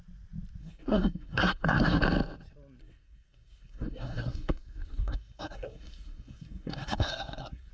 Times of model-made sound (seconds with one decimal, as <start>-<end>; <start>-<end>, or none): 0.6-2.0; 2.8-7.7